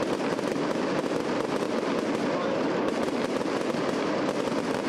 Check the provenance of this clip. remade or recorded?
recorded